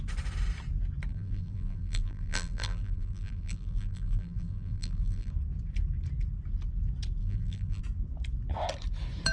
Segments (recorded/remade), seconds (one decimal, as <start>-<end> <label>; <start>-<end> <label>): 0.0-1.1 recorded; 1.1-5.3 remade; 5.3-7.2 recorded; 7.2-7.8 remade; 7.8-9.3 recorded